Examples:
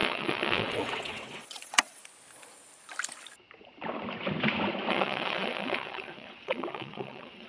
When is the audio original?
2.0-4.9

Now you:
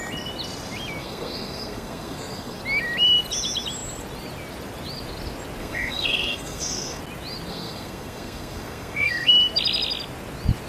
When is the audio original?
0.0-1.0; 2.6-5.6; 7.0-7.5; 9.3-10.7

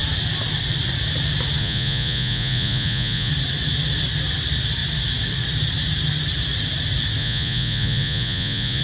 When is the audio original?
0.0-1.6; 3.3-7.2

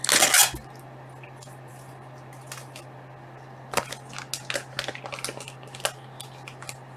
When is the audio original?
0.0-7.0

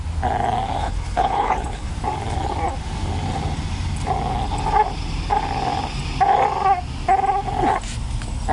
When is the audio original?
0.0-0.8; 1.9-8.5

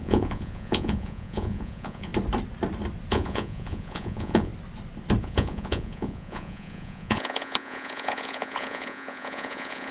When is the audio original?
2.1-3.1; 4.5-5.2

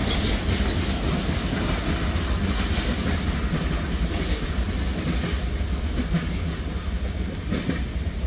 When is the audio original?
0.0-8.3

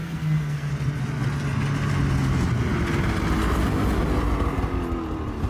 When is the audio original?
0.7-5.5